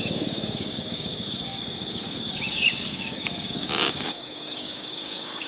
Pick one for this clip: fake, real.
fake